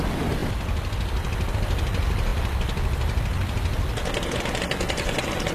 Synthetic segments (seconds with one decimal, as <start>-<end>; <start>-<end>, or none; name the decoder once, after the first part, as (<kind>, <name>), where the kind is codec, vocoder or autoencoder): none